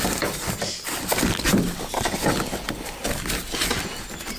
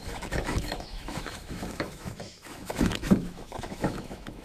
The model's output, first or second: second